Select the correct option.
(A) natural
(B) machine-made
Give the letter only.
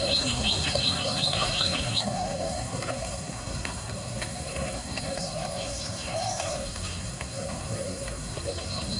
B